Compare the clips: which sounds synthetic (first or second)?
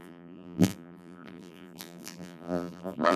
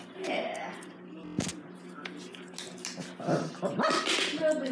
first